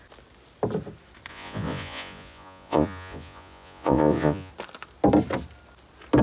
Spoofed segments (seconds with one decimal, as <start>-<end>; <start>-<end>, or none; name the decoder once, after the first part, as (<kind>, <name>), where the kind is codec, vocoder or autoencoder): 1.3-4.5 (vocoder, Vocos)